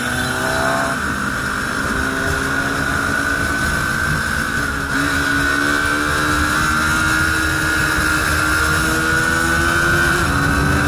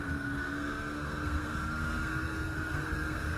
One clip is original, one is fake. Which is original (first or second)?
first